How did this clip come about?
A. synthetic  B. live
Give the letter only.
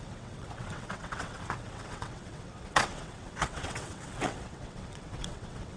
A